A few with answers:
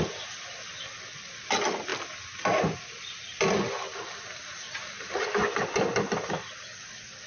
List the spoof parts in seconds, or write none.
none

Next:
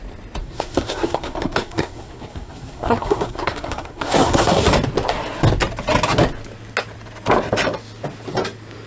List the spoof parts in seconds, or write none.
0.4-4.6 (codec, SNAC)

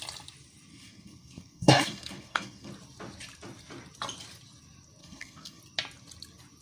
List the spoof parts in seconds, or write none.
0.7-2.7 (codec, SNAC); 5.0-5.6

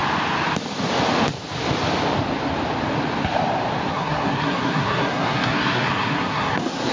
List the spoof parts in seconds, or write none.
3.9-6.9 (codec, SNAC)

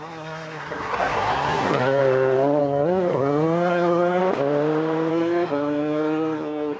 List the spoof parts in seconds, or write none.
0.0-2.0 (codec, SNAC); 2.6-4.2; 5.1-6.8

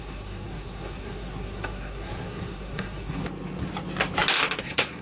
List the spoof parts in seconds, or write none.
0.0-3.2 (codec, SNAC); 4.6-5.0

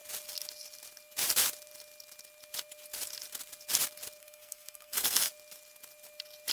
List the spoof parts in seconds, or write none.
4.2-5.3 (codec, SNAC)